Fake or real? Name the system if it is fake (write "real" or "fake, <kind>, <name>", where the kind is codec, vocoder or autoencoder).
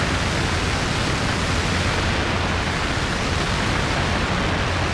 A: real